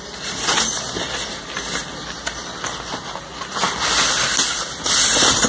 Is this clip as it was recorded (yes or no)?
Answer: yes